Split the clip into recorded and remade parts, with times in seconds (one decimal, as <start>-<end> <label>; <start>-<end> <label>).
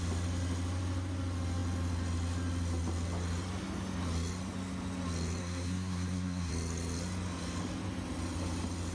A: 0.0-5.4 recorded; 5.4-6.5 remade; 6.5-8.9 recorded